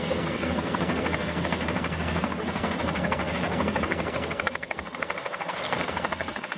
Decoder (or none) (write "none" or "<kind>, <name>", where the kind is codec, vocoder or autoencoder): codec, SNAC